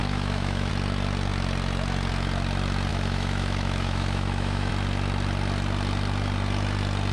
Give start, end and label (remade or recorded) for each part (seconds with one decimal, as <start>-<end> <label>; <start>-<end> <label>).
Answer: 0.0-0.7 remade; 0.7-2.9 recorded; 2.9-4.7 remade; 4.7-7.1 recorded

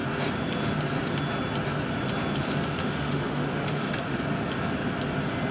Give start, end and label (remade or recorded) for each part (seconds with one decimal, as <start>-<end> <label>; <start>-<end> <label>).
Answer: 0.0-2.8 recorded; 2.8-4.2 remade; 4.2-5.5 recorded